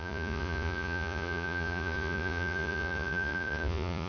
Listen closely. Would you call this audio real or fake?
fake